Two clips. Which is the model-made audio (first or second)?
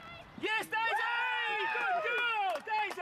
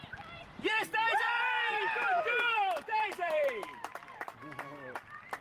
second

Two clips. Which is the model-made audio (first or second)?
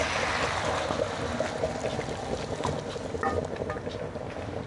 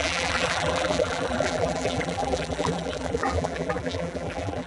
second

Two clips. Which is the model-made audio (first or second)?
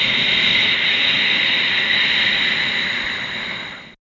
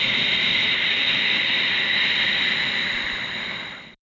second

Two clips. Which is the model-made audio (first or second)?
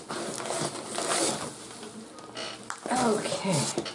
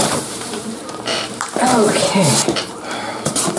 second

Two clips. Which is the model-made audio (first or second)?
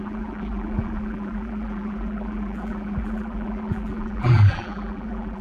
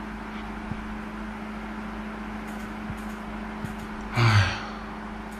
first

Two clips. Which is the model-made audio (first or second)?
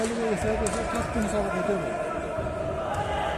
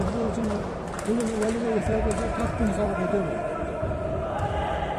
second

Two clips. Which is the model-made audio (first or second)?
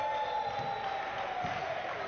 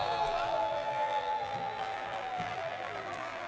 second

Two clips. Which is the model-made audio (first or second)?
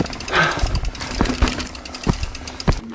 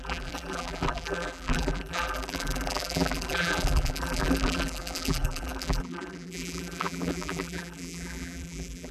second